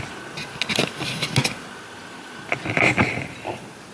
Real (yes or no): yes